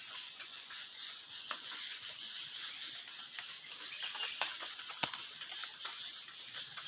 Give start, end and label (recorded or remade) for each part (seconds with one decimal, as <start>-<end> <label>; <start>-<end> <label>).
0.0-2.4 remade; 2.4-4.5 recorded; 4.5-5.2 remade; 5.2-6.9 recorded